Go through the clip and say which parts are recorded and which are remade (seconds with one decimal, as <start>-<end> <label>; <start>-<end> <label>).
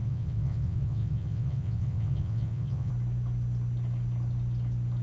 0.0-2.9 remade; 2.9-5.0 recorded